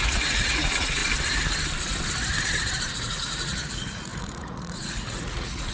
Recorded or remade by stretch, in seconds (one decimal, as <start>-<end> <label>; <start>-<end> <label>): 0.0-1.0 remade; 1.0-2.9 recorded; 2.9-5.7 remade